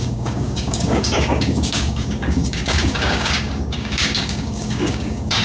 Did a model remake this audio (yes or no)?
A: yes